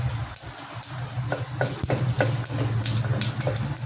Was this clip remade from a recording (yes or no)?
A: no